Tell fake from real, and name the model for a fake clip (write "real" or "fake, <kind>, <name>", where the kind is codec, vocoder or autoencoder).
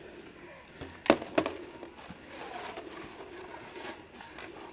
real